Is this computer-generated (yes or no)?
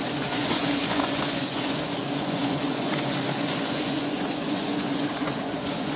yes